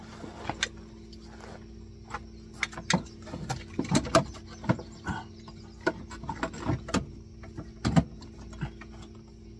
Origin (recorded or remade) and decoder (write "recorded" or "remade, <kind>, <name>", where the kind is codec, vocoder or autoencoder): recorded